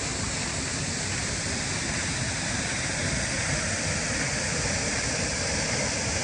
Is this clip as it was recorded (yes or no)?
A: no